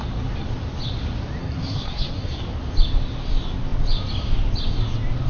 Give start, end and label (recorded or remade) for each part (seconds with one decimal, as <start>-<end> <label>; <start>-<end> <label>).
0.0-1.4 recorded; 1.4-2.4 remade; 2.4-5.3 recorded